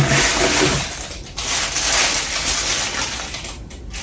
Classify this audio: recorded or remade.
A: recorded